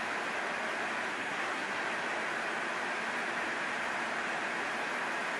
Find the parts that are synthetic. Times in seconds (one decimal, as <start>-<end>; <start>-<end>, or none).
1.1-1.9